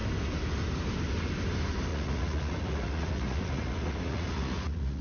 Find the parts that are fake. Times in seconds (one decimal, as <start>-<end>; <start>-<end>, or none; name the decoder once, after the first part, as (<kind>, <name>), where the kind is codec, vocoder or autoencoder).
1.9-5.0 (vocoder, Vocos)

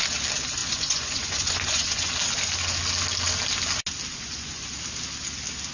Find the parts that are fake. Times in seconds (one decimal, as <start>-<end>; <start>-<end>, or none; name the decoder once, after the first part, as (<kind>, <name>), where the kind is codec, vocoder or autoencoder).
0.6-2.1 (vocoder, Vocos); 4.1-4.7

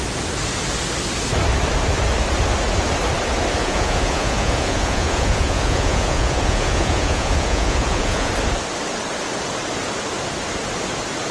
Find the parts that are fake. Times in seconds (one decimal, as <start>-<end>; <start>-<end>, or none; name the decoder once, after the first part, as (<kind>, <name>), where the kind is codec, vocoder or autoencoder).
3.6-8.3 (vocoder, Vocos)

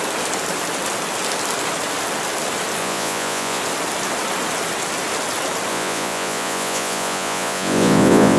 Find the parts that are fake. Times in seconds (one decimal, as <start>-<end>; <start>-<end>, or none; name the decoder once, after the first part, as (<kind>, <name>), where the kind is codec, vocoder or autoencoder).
2.8-3.6 (vocoder, Vocos); 5.7-8.4